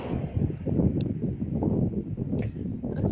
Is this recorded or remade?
recorded